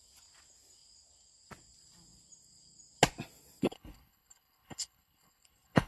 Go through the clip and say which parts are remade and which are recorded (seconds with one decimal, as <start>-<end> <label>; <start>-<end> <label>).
0.0-3.6 recorded; 3.6-5.9 remade